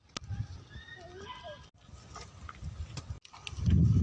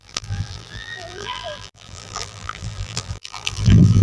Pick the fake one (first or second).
second